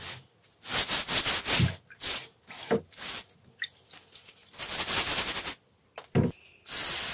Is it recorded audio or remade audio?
recorded